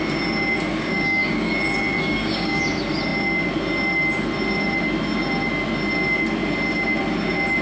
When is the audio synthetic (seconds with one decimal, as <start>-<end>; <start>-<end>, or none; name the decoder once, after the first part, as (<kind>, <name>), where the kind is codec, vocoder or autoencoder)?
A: 0.7-1.5 (codec, DAC); 2.0-2.6